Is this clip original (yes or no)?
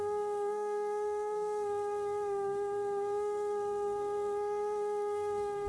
no